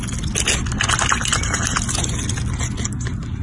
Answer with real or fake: real